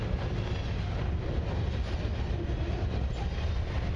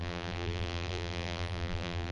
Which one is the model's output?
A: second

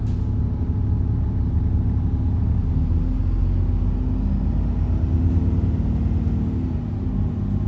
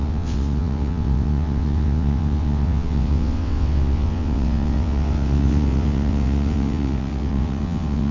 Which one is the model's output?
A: second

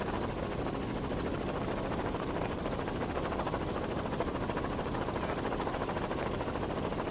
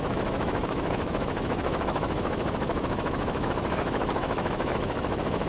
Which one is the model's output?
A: second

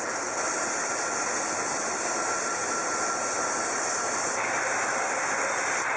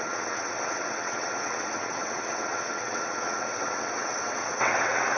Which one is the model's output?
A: second